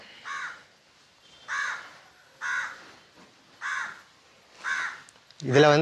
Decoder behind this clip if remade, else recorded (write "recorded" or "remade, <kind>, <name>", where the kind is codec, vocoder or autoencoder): recorded